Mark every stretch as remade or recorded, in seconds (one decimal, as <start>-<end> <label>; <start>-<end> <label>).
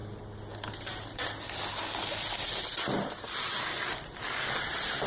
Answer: 0.0-5.1 recorded